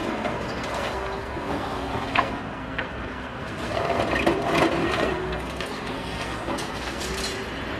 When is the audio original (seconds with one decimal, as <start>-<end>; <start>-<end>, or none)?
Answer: 4.0-4.8; 7.2-7.8